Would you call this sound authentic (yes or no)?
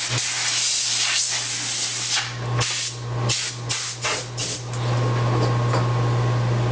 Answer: yes